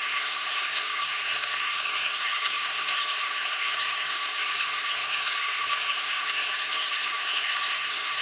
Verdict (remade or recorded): remade